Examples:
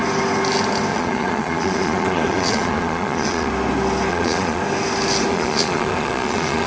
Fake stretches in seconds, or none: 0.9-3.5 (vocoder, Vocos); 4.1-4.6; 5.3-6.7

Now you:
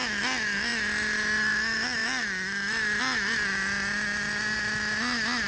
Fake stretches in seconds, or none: none

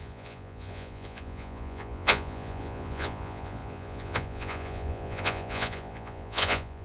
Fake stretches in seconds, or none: 0.0-6.8 (vocoder, Vocos)

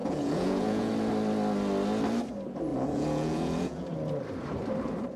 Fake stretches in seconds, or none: 0.0-0.9 (vocoder, Vocos); 2.7-3.9

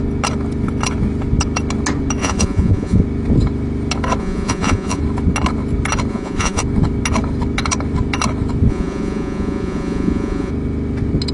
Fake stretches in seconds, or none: 2.2-3.0 (vocoder, Vocos); 4.2-5.0; 6.1-6.6; 8.7-10.5

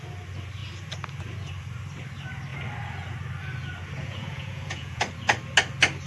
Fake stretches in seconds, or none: 4.0-5.0 (vocoder, Vocos)

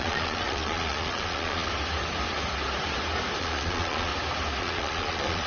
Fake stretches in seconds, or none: 0.0-1.7 (vocoder, Vocos); 3.4-4.1; 4.6-5.5